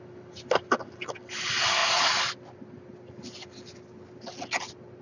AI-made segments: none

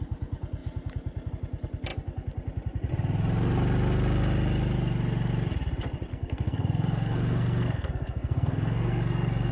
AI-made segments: 6.1-9.5 (codec, SNAC)

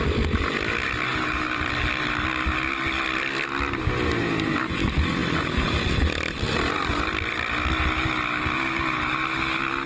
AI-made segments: 1.1-1.7 (vocoder, BigVGAN v2)

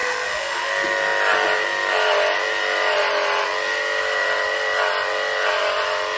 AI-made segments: 0.0-0.7 (autoencoder, DAC-VAE)

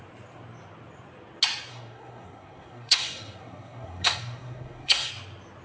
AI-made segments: 1.7-5.1 (codec, SNAC)

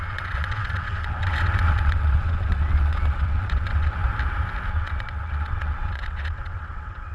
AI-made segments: 0.0-4.0 (vocoder, WaveNeXt); 4.7-7.1

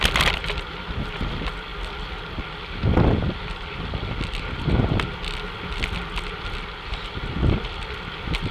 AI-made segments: none

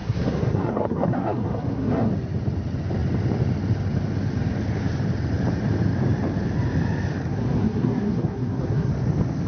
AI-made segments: 0.0-2.1 (codec, SNAC); 7.3-8.9